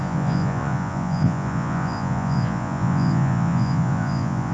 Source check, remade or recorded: remade